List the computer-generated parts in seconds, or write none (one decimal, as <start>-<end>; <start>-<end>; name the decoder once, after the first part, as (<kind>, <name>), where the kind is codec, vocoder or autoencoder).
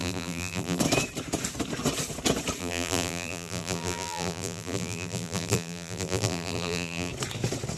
0.0-0.8 (vocoder, BigVGAN v2); 2.6-7.1